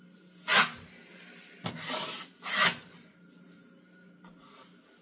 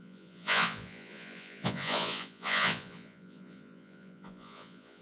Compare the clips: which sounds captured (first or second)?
first